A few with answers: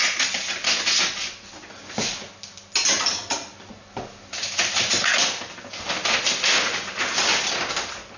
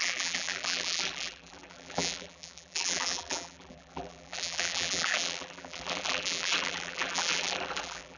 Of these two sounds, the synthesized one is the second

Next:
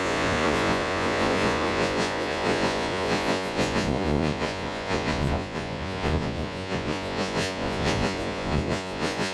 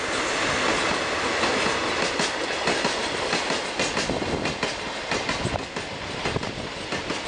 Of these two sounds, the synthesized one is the first